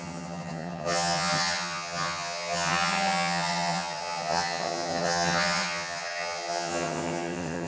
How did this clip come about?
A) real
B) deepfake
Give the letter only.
B